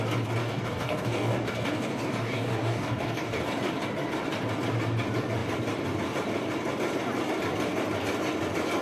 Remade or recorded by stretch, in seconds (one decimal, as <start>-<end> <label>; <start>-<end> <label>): 0.0-0.4 recorded; 0.4-3.4 remade; 3.4-8.8 recorded